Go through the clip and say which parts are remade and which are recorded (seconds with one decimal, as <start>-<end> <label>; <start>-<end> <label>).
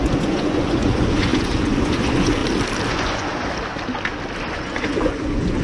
0.0-2.4 remade; 2.4-2.9 recorded; 2.9-3.3 remade; 3.3-4.5 recorded; 4.5-5.6 remade